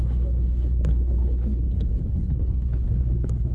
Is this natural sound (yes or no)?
no